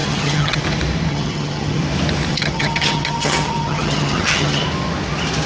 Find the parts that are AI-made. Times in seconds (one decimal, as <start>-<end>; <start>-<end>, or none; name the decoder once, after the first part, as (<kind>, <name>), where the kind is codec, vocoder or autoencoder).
0.0-0.6 (vocoder, HiFi-GAN); 1.1-1.8; 2.3-4.6